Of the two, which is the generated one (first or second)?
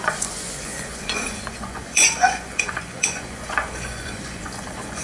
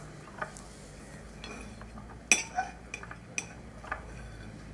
first